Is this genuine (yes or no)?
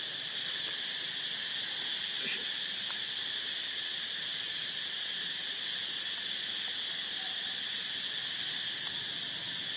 yes